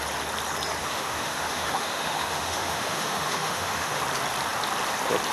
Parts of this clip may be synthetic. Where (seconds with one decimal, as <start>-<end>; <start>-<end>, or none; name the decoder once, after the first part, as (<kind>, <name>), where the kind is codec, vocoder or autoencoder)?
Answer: 0.8-4.0 (autoencoder, DAC-VAE)